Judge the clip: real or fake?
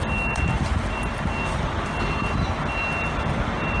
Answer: real